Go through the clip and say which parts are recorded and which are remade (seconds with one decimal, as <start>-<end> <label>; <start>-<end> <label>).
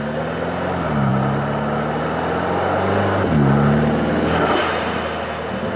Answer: 0.0-5.8 recorded